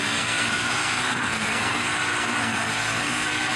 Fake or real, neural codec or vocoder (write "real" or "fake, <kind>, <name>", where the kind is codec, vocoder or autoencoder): fake, codec, SNAC